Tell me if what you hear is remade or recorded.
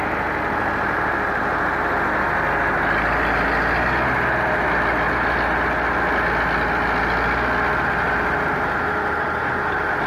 recorded